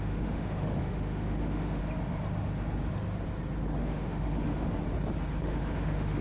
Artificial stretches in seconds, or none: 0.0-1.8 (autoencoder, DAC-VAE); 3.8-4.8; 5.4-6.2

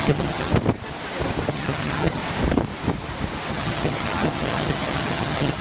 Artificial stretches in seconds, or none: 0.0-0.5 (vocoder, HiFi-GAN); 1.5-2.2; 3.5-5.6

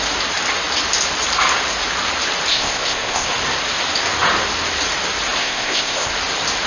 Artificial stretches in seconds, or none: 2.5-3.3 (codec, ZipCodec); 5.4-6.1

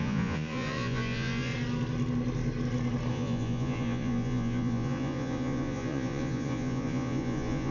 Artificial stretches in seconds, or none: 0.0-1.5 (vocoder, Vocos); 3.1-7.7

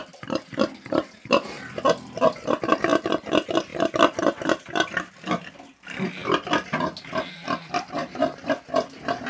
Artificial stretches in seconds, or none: 3.7-5.2 (vocoder, BigVGAN v2)